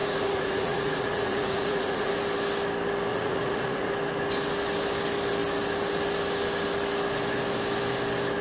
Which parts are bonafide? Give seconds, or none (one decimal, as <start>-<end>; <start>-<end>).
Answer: 2.1-3.1; 3.9-8.4